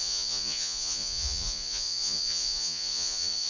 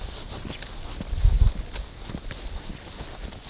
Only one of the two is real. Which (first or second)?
second